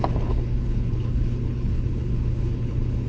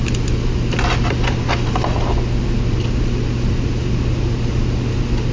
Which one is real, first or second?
second